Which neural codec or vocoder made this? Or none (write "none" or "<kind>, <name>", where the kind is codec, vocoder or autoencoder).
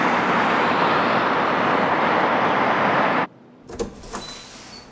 none